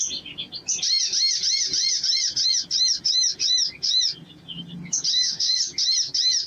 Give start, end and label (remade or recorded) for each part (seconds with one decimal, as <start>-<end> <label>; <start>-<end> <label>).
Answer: 0.0-5.1 recorded; 5.1-5.6 remade; 5.6-6.5 recorded